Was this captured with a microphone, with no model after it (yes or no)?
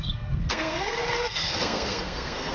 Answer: no